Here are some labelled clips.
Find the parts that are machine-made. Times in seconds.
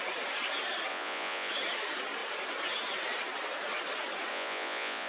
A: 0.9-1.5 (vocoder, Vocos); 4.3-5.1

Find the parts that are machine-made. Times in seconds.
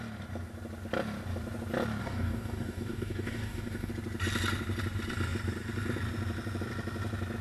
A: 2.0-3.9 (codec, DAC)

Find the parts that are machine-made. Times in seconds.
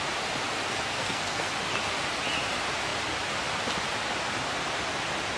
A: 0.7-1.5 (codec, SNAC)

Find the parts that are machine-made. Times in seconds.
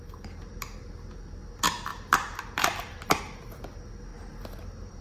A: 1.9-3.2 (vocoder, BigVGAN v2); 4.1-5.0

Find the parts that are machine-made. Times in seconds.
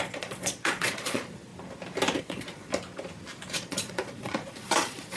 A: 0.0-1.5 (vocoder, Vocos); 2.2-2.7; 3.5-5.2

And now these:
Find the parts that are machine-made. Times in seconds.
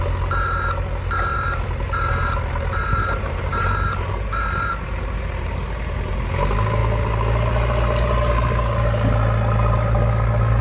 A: 1.3-6.2 (vocoder, BigVGAN v2)